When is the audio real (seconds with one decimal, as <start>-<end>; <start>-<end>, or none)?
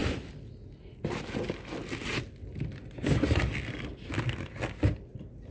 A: 0.0-5.5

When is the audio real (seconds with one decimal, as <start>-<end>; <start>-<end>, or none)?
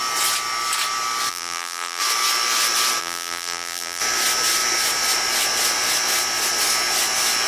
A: 0.0-1.3; 2.0-3.0; 4.0-7.5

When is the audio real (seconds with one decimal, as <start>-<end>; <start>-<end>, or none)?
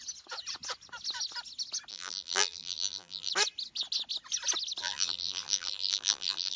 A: 0.0-1.9; 3.3-4.8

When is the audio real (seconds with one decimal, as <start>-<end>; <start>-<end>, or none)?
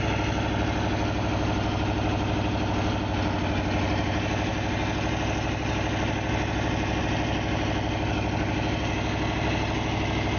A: 0.0-10.4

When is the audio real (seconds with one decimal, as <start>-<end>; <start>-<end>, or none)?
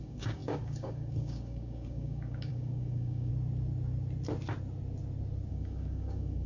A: 3.3-5.5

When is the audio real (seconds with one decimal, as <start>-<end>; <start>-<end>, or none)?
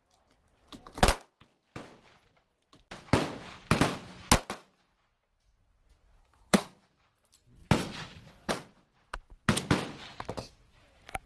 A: 0.0-6.2; 6.9-11.3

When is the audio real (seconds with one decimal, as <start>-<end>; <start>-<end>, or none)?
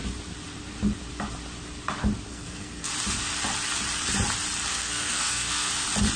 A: 0.0-2.3; 2.9-4.7; 5.7-6.2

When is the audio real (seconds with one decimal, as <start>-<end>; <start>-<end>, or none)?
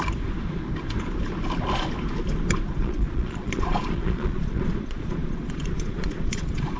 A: 0.0-2.7